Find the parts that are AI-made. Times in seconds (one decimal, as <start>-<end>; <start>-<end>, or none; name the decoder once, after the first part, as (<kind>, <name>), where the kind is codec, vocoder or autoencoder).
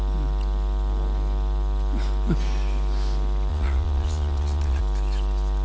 3.5-4.8 (vocoder, Vocos)